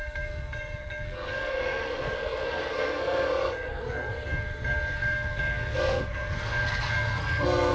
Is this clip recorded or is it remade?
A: remade